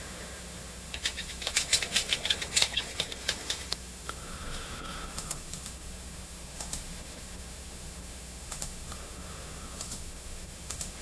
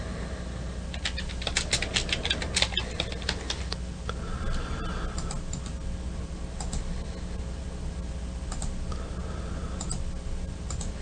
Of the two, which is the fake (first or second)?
first